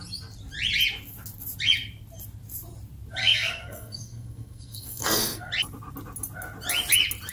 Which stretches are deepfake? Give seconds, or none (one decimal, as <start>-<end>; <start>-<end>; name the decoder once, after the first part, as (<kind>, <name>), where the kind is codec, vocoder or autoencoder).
3.2-5.5 (codec, SNAC)